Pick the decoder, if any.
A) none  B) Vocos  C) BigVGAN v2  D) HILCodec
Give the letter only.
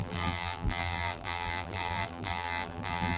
C